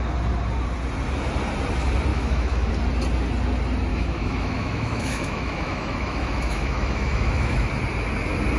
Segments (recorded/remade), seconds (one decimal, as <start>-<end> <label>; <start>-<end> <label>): 0.0-2.1 recorded; 2.1-2.7 remade; 2.7-3.9 recorded; 3.9-7.7 remade; 7.7-8.6 recorded